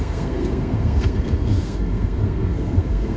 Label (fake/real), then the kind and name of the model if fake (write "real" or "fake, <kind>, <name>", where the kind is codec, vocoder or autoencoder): fake, codec, SNAC